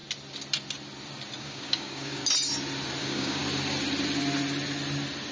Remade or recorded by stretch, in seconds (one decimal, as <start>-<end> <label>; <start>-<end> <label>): 0.0-1.4 recorded; 1.4-2.2 remade; 2.2-3.0 recorded; 3.0-3.4 remade; 3.4-5.3 recorded